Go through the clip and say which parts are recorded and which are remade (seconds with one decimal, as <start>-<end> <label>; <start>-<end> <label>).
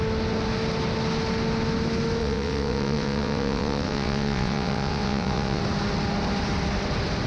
0.0-2.2 recorded; 2.2-5.6 remade; 5.6-7.3 recorded